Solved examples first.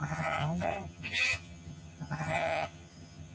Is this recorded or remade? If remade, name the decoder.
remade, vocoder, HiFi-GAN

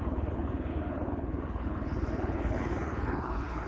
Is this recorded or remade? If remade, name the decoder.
remade, codec, HILCodec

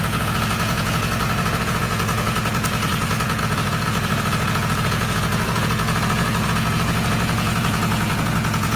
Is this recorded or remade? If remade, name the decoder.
remade, vocoder, Vocos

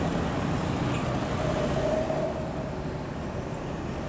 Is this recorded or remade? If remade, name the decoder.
recorded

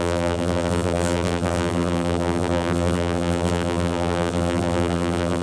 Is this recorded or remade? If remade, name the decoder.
remade, vocoder, BigVGAN v2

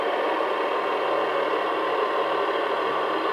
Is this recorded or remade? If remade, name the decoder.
recorded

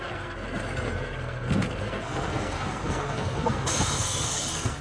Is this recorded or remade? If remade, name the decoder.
remade, codec, SNAC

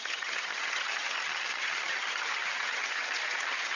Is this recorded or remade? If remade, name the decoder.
remade, vocoder, HiFi-GAN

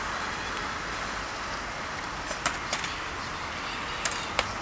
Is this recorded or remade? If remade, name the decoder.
recorded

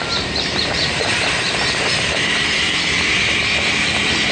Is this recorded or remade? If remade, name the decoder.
remade, vocoder, BigVGAN v2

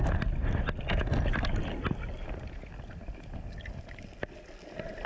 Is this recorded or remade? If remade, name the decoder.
recorded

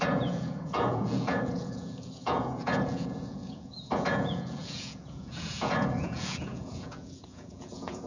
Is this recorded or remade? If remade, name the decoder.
remade, vocoder, Vocos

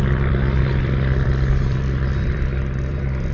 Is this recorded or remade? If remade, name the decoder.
remade, vocoder, BigVGAN v2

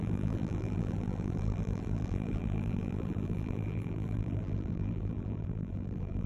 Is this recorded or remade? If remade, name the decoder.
remade, vocoder, BigVGAN v2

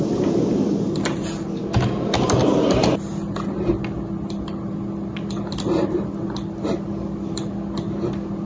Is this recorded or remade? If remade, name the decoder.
recorded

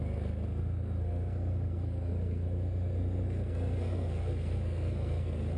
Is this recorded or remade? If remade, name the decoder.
remade, codec, SNAC